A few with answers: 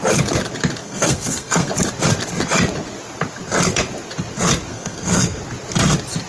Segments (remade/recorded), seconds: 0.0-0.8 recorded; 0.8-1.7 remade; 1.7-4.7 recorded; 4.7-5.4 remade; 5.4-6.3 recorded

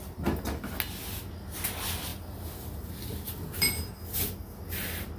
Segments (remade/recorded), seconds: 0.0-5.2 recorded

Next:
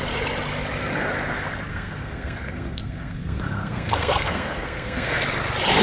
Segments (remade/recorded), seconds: 0.0-1.7 recorded; 1.7-5.2 remade; 5.2-5.8 recorded